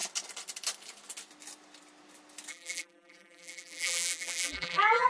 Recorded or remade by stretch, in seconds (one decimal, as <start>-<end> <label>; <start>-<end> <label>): 0.0-2.5 recorded; 2.5-5.1 remade